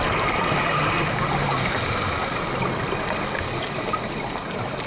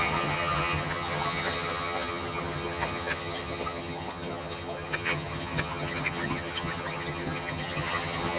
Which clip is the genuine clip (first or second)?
first